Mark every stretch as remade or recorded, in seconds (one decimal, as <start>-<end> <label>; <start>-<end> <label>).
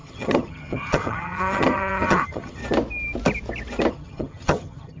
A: 0.0-2.6 remade; 2.6-3.9 recorded; 3.9-5.0 remade